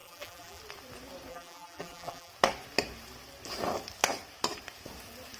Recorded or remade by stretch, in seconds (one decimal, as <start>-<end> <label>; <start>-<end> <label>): 0.0-0.6 remade; 0.6-1.3 recorded; 1.3-2.3 remade; 2.3-5.4 recorded